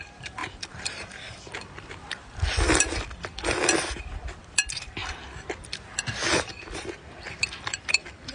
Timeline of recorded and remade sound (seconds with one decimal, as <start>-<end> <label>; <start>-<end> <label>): 0.0-5.0 remade; 5.0-6.3 recorded; 6.3-8.3 remade